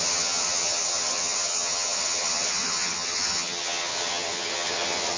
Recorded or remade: remade